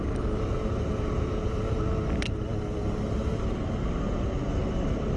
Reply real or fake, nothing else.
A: real